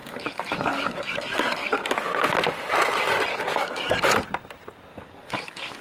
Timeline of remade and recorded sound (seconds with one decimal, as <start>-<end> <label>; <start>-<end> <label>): 0.0-1.9 remade; 1.9-3.3 recorded; 3.3-4.0 remade; 4.0-4.9 recorded; 4.9-5.8 remade